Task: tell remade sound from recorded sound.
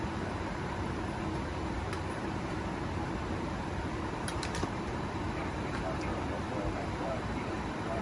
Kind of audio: remade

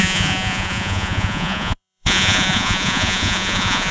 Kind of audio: remade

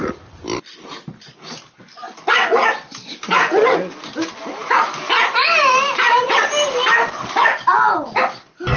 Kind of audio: recorded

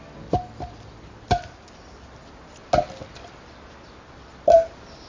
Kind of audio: recorded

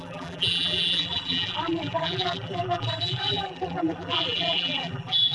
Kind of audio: remade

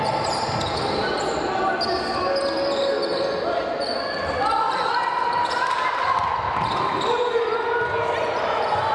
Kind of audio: recorded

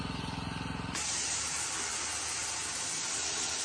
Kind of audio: recorded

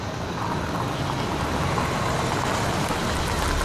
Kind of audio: recorded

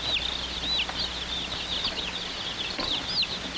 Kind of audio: recorded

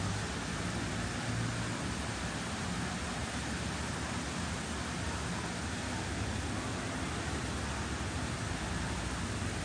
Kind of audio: recorded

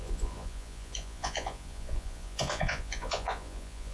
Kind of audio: remade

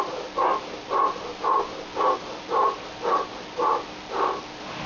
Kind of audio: recorded